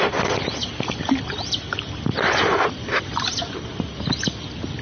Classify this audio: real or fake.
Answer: real